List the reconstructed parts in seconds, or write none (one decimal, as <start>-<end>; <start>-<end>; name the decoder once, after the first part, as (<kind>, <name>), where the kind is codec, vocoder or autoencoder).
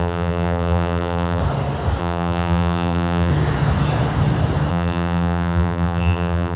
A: 0.0-1.4 (vocoder, BigVGAN v2); 2.0-3.3; 4.7-6.6